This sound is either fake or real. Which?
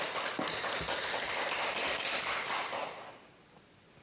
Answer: real